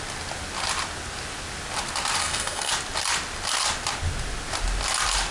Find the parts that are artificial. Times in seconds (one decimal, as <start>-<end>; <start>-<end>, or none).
2.2-2.7